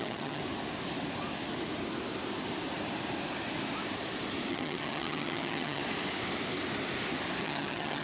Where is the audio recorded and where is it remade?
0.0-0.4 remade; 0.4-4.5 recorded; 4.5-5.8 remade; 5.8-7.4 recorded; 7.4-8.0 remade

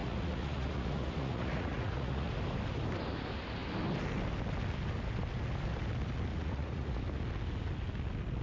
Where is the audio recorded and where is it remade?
0.0-2.3 remade; 2.3-6.3 recorded; 6.3-7.0 remade; 7.0-8.4 recorded

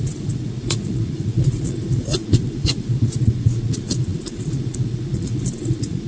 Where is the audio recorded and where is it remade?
0.0-6.1 remade

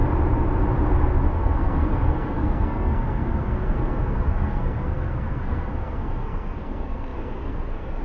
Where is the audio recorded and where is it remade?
0.0-1.3 recorded; 1.3-8.0 remade

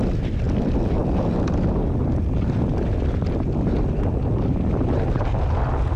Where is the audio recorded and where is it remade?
0.0-6.0 recorded